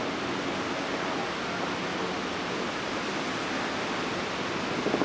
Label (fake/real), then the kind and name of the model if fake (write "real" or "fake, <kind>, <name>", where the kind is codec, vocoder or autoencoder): real